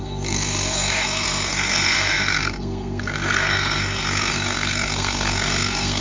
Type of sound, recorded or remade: remade